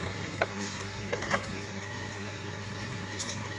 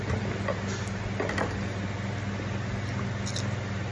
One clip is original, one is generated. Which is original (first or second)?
second